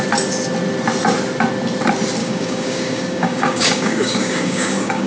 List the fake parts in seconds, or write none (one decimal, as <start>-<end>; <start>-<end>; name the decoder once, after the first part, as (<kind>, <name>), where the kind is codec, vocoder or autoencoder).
2.2-5.1 (codec, DAC)